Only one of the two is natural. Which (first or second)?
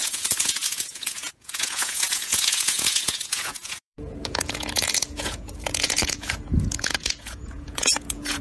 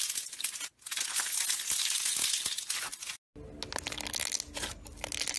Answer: second